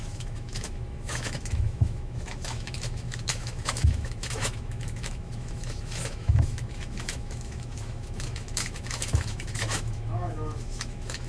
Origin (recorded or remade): remade